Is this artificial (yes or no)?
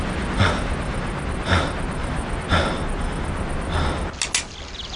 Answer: no